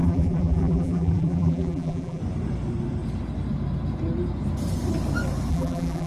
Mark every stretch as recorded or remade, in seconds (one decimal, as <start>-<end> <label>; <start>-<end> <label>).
0.0-2.2 remade; 2.2-5.5 recorded; 5.5-6.1 remade